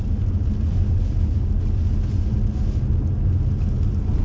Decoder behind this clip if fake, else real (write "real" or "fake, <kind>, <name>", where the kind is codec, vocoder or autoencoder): real